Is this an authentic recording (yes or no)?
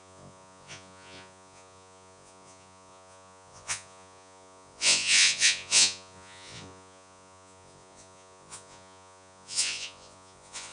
no